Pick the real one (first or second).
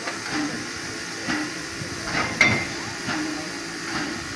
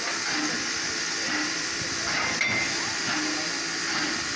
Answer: second